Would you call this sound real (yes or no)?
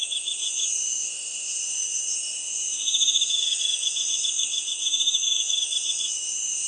no